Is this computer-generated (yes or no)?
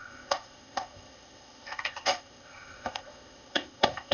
yes